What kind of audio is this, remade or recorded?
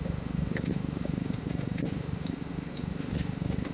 remade